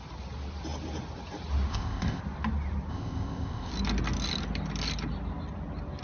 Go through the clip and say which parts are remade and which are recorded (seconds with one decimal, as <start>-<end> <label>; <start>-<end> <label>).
0.0-1.7 recorded; 1.7-2.2 remade; 2.2-2.9 recorded; 2.9-3.7 remade; 3.7-6.0 recorded